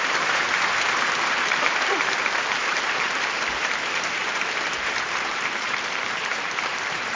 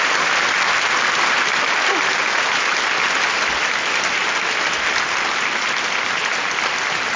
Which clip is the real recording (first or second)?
second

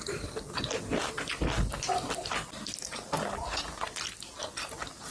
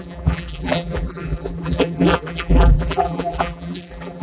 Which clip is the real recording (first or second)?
first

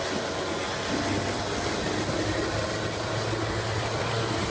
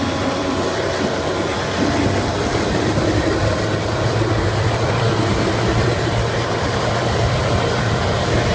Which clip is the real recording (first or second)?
first